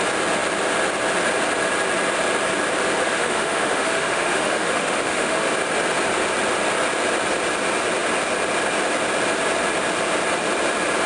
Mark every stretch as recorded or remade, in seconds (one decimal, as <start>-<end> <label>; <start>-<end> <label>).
0.0-3.0 recorded; 3.0-5.5 remade; 5.5-11.1 recorded